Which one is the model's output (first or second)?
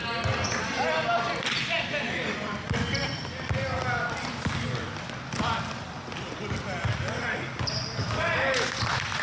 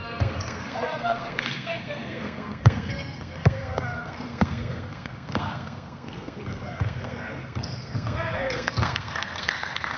second